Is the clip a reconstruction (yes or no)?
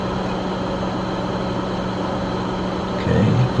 no